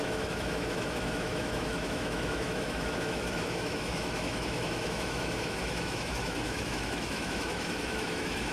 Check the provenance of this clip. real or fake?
fake